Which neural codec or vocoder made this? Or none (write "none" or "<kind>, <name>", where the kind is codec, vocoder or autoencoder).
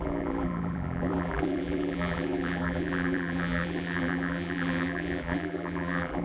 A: vocoder, BigVGAN v2